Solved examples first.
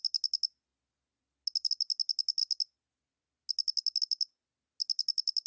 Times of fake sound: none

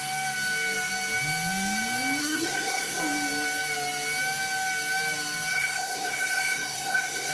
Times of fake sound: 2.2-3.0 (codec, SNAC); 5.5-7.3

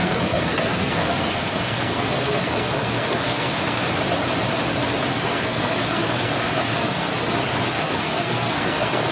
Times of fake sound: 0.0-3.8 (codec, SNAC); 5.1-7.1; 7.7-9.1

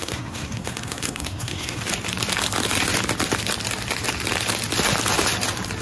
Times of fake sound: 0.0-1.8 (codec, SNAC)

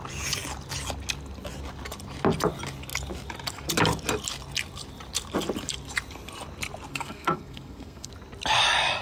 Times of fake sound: 6.9-8.1 (codec, SNAC)

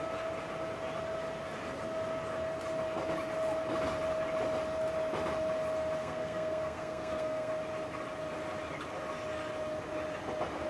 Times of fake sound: 6.0-7.5 (codec, SNAC)

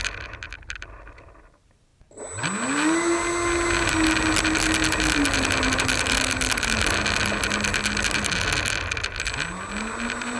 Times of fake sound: none

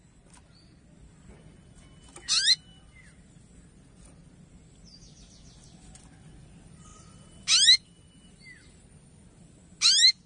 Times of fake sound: none